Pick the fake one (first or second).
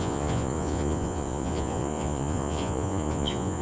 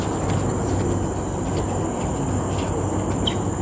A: first